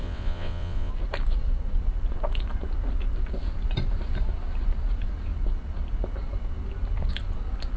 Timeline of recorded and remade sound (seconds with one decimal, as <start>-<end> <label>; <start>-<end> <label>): 0.0-0.9 remade; 0.9-7.8 recorded